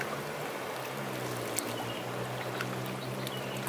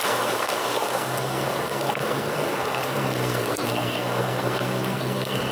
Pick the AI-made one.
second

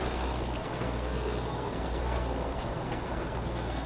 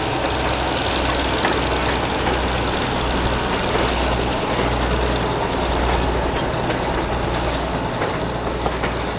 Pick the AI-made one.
first